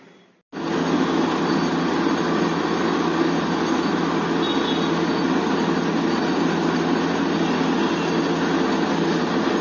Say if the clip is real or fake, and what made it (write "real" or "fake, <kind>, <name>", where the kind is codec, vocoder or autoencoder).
real